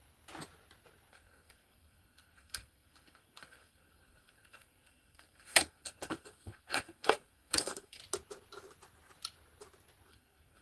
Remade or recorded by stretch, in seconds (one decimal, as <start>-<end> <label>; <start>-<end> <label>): 0.0-1.1 recorded; 1.1-8.0 remade; 8.0-10.1 recorded; 10.1-10.6 remade